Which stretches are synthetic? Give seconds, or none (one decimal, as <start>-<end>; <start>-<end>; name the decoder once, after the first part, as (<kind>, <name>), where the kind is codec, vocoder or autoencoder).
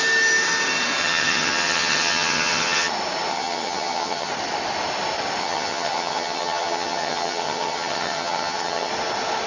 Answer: 1.0-2.9 (vocoder, HiFi-GAN); 3.3-4.3; 5.4-8.9